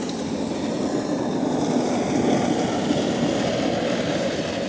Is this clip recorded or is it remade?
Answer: recorded